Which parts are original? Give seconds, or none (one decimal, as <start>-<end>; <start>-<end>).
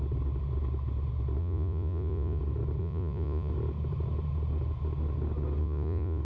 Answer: 0.0-1.4; 2.4-2.8; 3.5-5.6